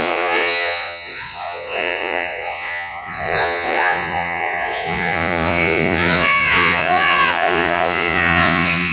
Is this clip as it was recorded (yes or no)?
no